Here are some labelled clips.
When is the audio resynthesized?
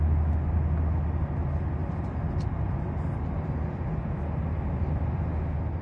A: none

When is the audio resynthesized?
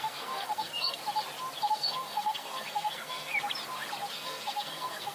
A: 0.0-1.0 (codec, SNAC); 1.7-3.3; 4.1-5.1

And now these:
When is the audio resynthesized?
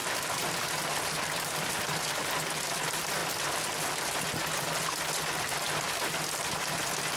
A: 0.0-1.7 (vocoder, BigVGAN v2); 3.2-4.2